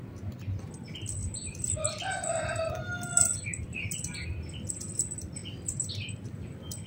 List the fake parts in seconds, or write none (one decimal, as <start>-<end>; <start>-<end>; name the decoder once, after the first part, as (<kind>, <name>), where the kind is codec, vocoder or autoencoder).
1.2-2.7 (vocoder, BigVGAN v2); 5.4-5.9